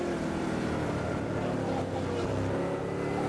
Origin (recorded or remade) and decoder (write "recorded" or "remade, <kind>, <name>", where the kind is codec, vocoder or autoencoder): recorded